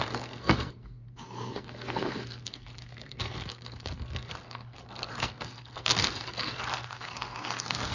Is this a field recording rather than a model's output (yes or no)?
no